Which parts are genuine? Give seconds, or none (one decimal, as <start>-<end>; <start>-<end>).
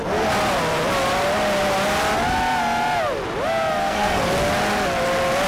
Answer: 0.0-3.8; 4.3-5.5